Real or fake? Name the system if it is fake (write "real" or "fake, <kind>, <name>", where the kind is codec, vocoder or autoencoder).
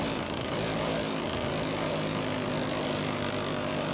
real